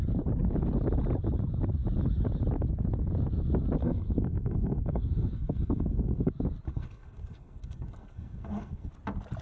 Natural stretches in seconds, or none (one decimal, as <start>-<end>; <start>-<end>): 0.0-3.8; 6.3-6.7; 8.9-9.4